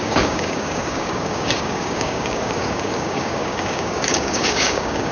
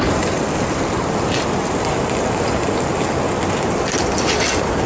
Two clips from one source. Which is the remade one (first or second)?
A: first